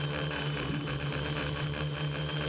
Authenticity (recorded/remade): remade